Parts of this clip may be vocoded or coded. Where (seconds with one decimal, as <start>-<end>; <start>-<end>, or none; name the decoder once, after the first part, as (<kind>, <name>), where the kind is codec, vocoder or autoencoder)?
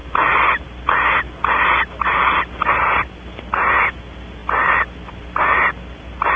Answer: none